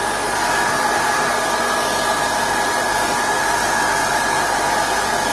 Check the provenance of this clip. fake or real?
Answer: real